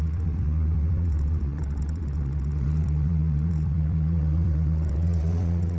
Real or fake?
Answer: fake